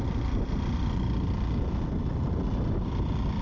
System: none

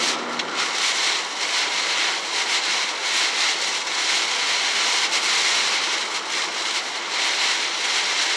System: none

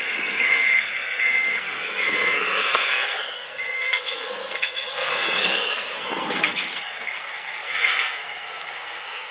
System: codec, SNAC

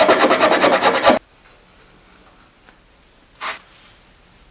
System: none